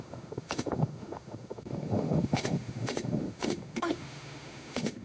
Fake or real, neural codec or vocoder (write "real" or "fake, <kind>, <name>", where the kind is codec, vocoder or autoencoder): fake, autoencoder, DAC-VAE